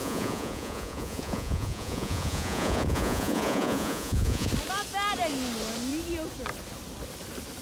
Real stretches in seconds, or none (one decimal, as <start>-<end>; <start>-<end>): 4.5-7.6